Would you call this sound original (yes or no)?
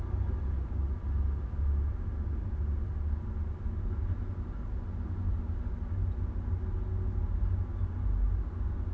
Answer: yes